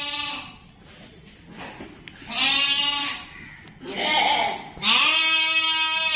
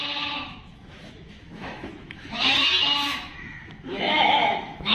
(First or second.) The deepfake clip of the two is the second